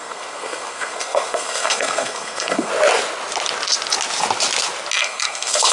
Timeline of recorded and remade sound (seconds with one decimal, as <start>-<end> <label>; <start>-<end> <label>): 0.0-2.7 remade; 2.7-5.0 recorded; 5.0-5.7 remade